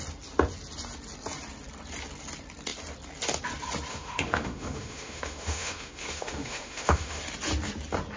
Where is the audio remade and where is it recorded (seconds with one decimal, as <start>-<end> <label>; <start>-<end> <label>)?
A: 0.0-3.9 recorded; 3.9-7.2 remade; 7.2-8.2 recorded